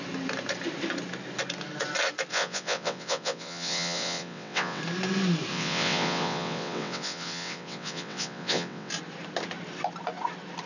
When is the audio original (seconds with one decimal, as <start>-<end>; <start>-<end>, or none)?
0.0-2.3; 4.8-5.5; 8.9-10.7